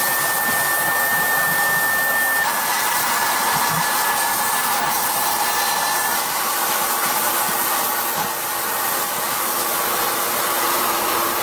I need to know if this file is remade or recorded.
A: recorded